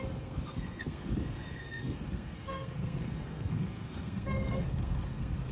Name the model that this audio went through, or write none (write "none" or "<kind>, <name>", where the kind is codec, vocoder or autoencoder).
codec, SNAC